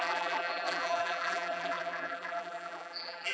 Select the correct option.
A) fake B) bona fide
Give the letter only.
A